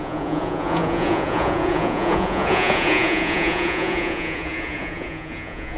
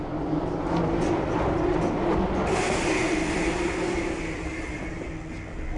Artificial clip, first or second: first